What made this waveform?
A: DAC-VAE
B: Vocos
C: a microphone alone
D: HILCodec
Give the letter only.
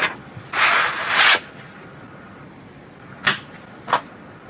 C